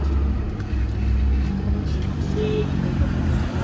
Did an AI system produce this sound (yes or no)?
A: no